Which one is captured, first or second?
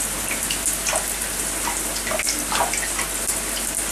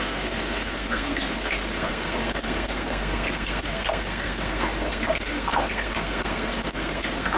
first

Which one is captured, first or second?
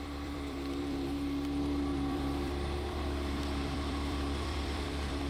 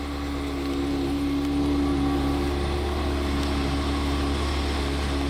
second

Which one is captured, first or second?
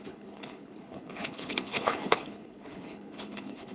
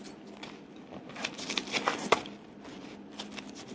second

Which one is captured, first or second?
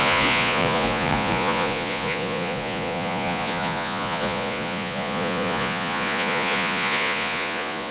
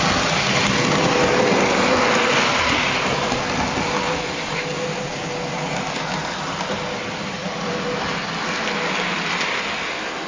second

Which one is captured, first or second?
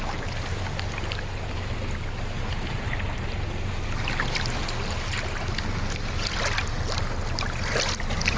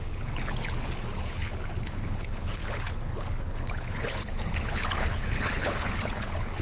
first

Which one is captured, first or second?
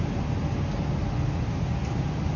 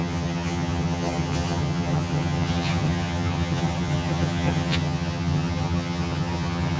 first